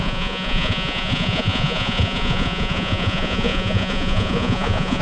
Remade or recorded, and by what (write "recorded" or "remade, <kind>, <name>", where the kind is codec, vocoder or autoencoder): remade, vocoder, Vocos